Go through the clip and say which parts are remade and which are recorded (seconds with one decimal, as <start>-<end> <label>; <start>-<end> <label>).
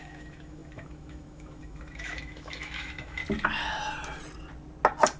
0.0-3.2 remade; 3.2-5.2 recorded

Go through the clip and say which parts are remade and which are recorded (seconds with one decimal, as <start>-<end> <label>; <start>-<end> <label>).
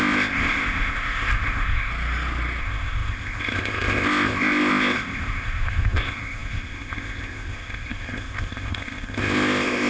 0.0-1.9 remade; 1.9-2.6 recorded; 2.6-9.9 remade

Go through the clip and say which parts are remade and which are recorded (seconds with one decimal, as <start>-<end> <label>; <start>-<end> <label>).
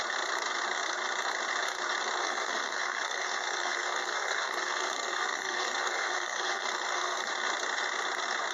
0.0-2.2 recorded; 2.2-7.3 remade; 7.3-8.5 recorded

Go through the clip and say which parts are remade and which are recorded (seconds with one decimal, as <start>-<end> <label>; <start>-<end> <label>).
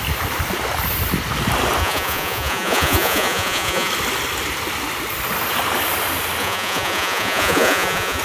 0.0-1.8 recorded; 1.8-3.9 remade; 3.9-6.4 recorded; 6.4-8.2 remade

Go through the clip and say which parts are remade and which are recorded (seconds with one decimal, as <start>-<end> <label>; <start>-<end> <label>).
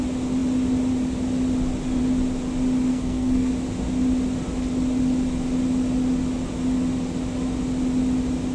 0.0-2.9 recorded; 2.9-3.5 remade; 3.5-8.5 recorded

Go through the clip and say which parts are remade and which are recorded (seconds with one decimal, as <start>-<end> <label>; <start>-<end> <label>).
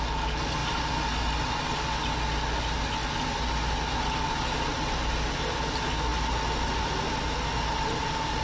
0.0-8.4 recorded